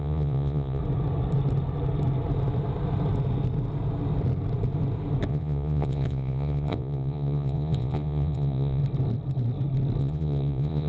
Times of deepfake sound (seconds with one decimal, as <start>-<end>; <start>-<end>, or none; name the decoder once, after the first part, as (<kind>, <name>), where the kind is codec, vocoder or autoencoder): 0.0-0.8 (vocoder, Vocos); 5.3-8.8; 10.0-10.9